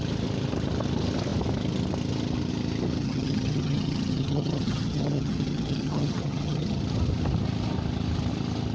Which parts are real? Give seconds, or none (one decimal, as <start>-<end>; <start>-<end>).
0.0-3.0; 6.8-8.7